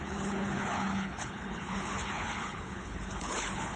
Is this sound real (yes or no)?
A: no